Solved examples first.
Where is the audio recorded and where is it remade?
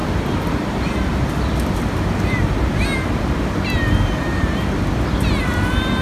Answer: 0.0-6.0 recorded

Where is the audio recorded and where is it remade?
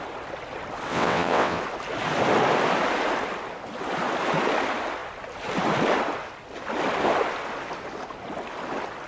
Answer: 0.0-0.9 recorded; 0.9-1.6 remade; 1.6-9.1 recorded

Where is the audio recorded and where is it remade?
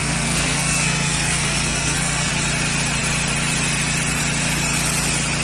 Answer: 0.0-2.3 remade; 2.3-5.4 recorded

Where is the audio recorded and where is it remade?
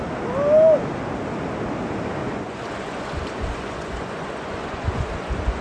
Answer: 0.0-2.2 recorded; 2.2-5.6 remade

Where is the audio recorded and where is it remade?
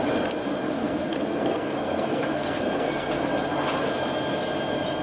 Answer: 0.0-0.8 recorded; 0.8-3.3 remade; 3.3-5.0 recorded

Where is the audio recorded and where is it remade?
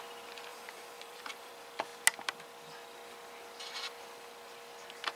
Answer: 0.0-0.5 recorded; 0.5-1.5 remade; 1.5-5.2 recorded